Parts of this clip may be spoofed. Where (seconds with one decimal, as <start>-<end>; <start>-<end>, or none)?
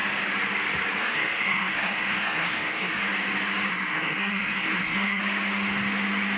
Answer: 1.0-3.0; 3.7-5.2